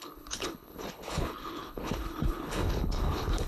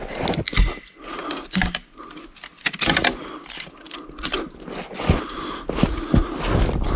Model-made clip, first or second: first